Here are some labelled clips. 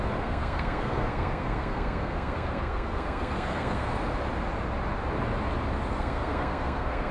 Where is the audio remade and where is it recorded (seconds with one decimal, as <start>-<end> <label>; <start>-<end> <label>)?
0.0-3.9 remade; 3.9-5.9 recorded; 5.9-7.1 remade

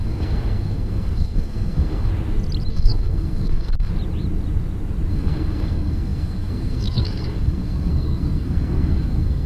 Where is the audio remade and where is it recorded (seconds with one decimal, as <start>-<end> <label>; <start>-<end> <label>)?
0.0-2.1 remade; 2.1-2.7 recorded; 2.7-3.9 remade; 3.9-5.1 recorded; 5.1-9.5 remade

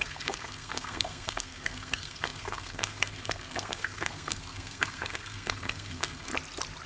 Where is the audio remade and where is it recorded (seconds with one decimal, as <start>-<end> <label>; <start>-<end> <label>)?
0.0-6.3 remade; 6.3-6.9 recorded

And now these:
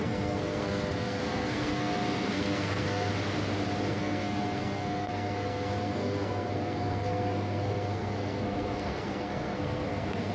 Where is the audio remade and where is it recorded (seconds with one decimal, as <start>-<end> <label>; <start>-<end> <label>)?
0.0-3.1 remade; 3.1-3.8 recorded; 3.8-10.3 remade

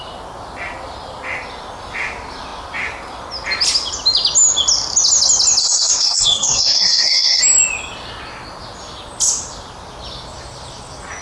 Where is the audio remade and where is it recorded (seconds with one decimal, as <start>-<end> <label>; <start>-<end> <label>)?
0.0-5.6 recorded; 5.6-7.4 remade; 7.4-11.2 recorded

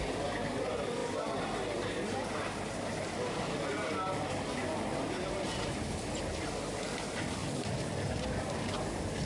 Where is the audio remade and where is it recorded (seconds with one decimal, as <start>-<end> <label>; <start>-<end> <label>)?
0.0-9.2 recorded